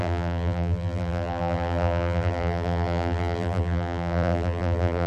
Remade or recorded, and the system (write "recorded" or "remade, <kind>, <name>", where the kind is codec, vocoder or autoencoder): remade, vocoder, BigVGAN v2